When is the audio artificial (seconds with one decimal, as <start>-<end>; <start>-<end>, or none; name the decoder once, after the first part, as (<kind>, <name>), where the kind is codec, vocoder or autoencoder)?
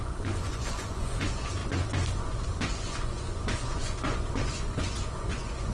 0.0-5.7 (vocoder, Vocos)